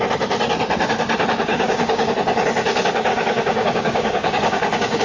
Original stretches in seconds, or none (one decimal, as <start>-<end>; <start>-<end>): 0.0-1.5; 2.1-3.1